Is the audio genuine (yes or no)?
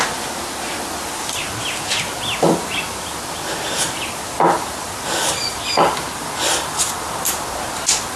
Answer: yes